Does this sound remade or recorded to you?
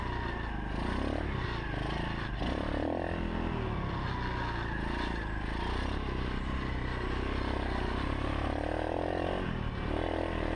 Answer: recorded